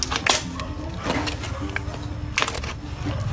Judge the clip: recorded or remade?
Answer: recorded